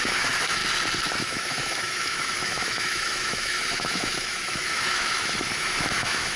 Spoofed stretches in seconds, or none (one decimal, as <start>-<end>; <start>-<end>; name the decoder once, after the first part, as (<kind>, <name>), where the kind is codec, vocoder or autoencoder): 0.0-0.6 (autoencoder, DAC-VAE); 1.2-6.4